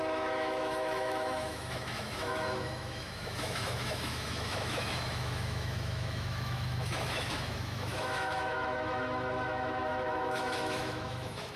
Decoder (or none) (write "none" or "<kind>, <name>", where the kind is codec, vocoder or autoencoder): autoencoder, DAC-VAE